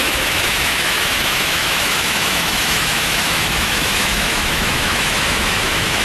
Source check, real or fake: fake